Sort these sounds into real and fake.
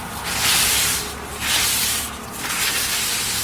real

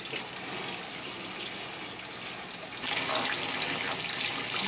real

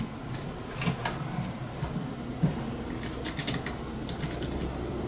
real